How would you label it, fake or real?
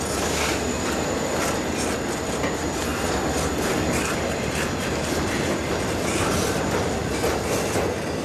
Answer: real